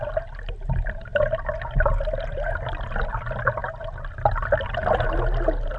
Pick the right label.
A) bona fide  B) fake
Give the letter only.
A